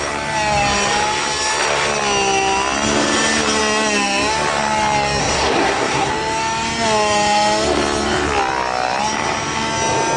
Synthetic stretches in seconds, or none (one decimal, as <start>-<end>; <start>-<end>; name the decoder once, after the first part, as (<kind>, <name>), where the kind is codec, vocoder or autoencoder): 5.2-6.1 (codec, SNAC)